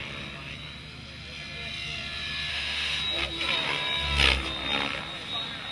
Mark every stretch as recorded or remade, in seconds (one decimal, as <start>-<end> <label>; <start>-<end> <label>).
0.0-2.5 recorded; 2.5-3.0 remade; 3.0-5.7 recorded